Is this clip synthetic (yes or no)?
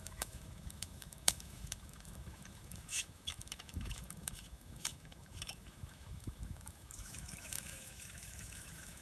yes